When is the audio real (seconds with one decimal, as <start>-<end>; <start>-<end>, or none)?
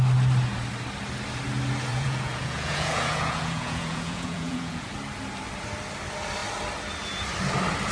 0.0-1.9; 4.9-7.9